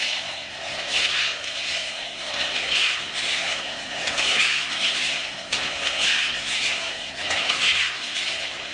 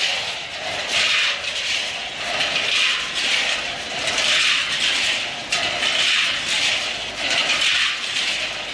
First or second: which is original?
second